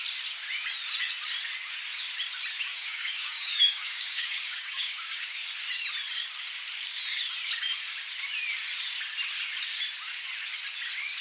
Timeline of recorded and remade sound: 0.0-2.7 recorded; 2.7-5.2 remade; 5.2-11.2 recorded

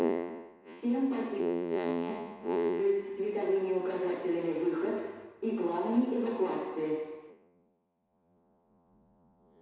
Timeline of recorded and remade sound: 0.0-0.8 remade; 0.8-1.4 recorded; 1.4-2.8 remade; 2.8-7.3 recorded; 7.3-9.6 remade

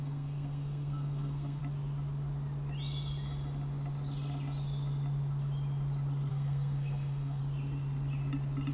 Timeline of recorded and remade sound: 0.0-1.6 remade; 1.6-6.3 recorded; 6.3-7.4 remade; 7.4-8.7 recorded

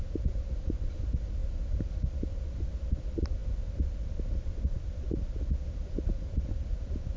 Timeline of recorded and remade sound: 0.0-7.2 recorded